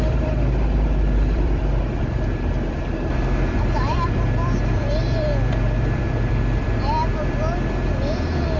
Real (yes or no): no